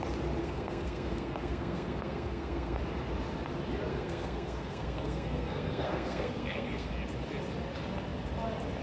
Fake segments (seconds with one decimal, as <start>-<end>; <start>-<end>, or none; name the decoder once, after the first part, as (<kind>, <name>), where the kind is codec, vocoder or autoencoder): 0.4-2.8 (codec, SNAC); 3.9-6.9